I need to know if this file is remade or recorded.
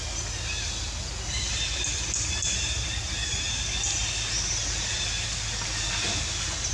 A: recorded